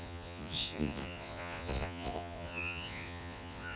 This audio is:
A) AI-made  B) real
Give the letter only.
A